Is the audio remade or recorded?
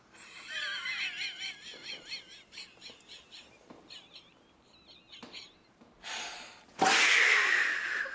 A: recorded